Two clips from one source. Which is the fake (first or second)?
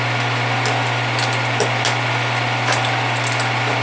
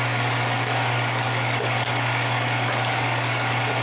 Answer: second